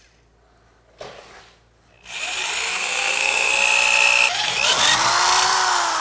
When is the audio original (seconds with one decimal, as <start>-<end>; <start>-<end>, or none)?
0.0-2.7; 3.5-6.0